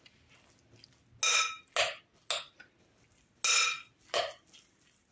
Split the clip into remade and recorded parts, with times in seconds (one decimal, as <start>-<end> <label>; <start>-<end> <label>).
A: 0.0-5.1 recorded